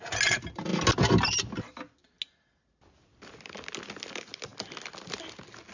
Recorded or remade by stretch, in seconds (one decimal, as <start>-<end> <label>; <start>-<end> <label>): 0.0-5.7 recorded